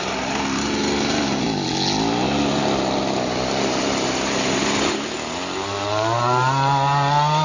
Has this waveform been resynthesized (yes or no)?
no